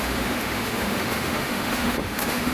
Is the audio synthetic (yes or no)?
yes